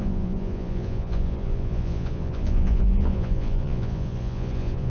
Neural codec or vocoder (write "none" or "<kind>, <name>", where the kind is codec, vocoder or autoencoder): vocoder, Vocos